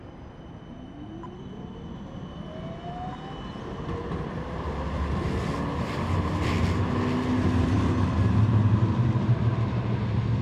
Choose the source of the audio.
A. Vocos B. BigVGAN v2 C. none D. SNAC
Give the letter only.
C